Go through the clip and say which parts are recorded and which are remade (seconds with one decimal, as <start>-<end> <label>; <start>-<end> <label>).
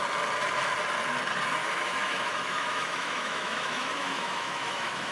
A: 0.0-1.6 recorded; 1.6-5.1 remade